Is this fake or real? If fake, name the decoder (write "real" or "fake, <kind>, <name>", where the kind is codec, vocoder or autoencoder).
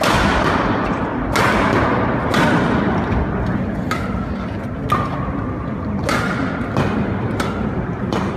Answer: real